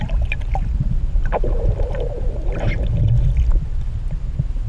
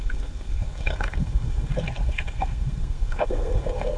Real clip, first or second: first